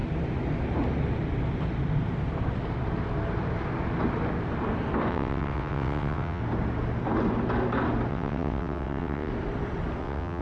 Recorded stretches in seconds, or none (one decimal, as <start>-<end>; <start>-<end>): 0.0-5.1; 6.4-8.1; 9.3-10.0